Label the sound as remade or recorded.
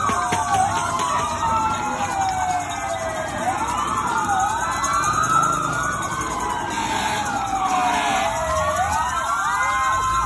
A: recorded